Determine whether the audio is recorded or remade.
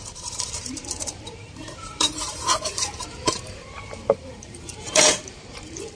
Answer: remade